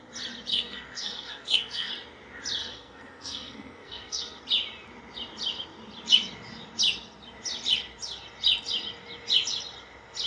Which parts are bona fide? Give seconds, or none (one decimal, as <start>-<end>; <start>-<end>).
0.0-0.5; 1.9-2.6; 4.4-10.3